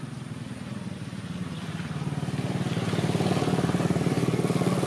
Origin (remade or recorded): recorded